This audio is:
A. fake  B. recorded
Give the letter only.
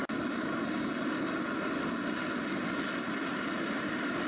B